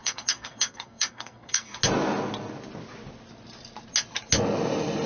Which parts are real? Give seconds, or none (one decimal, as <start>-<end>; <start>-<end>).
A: 1.8-5.1